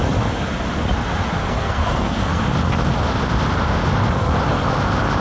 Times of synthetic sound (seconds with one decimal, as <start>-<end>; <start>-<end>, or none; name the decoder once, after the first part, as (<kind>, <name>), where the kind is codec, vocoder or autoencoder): 1.4-2.4 (codec, SNAC)